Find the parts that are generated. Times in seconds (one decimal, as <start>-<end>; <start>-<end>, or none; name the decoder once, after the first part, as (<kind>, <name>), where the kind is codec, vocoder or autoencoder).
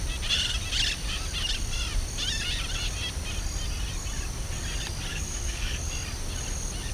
5.1-5.9 (codec, DAC)